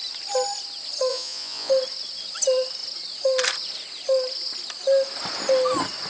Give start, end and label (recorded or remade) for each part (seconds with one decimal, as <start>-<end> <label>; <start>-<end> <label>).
0.0-1.1 recorded; 1.1-1.7 remade; 1.7-6.1 recorded